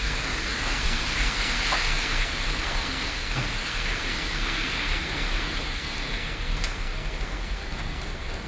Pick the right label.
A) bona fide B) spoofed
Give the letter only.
B